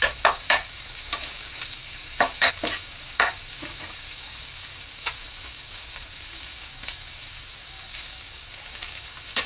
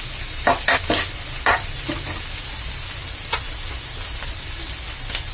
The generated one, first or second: first